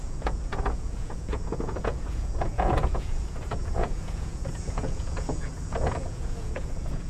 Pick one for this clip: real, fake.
fake